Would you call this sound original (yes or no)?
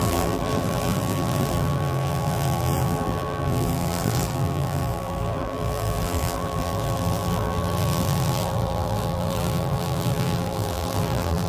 no